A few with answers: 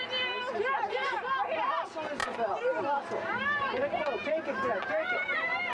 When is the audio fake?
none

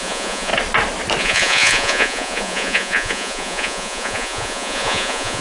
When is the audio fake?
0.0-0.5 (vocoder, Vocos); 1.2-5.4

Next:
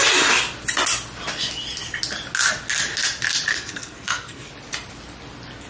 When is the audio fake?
3.5-4.5 (codec, SNAC)

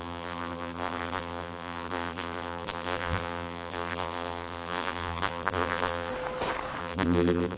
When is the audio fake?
0.0-6.1 (vocoder, BigVGAN v2); 6.8-7.6

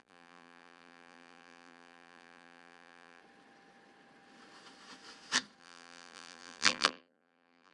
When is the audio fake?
0.0-3.2 (vocoder, BigVGAN v2); 5.6-7.7

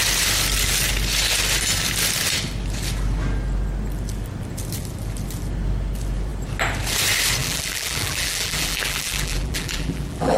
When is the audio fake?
7.4-10.4 (vocoder, BigVGAN v2)